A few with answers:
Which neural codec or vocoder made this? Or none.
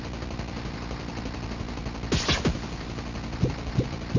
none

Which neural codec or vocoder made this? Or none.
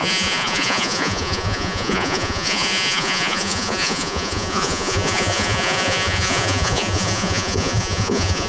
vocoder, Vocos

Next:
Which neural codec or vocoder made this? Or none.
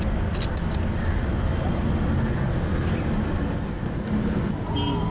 none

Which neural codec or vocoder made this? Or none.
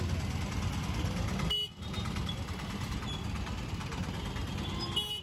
none